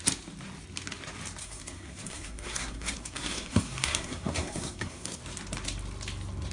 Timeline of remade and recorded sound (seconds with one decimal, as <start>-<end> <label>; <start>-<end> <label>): 0.0-1.4 recorded; 1.4-5.2 remade; 5.2-6.5 recorded